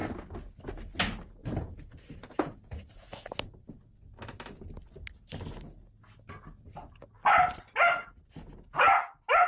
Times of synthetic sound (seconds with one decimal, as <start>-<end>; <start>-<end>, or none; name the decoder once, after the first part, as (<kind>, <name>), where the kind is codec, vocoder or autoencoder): 1.4-3.3 (vocoder, Vocos)